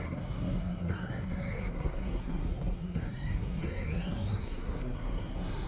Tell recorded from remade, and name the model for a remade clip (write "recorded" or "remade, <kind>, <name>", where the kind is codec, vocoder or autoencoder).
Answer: remade, codec, SNAC